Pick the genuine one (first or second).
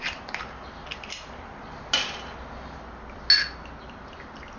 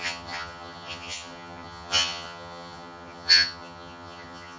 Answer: first